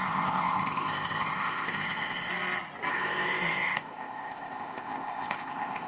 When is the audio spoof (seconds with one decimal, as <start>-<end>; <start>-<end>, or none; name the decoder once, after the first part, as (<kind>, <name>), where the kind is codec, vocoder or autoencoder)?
0.0-2.3 (codec, ZipCodec); 2.9-5.9